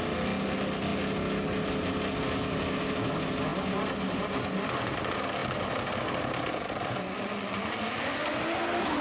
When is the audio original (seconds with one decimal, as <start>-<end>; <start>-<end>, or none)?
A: 0.0-9.0